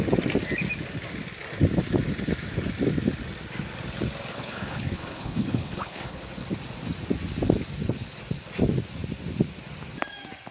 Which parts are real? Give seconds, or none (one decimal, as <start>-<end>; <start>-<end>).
0.0-4.3; 6.2-10.5